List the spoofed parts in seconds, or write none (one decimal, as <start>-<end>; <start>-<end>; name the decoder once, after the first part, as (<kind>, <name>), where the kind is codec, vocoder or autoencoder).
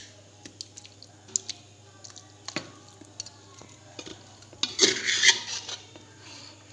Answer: none